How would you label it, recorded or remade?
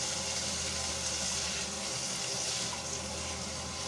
recorded